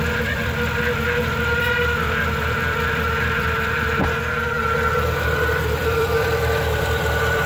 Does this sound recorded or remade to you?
remade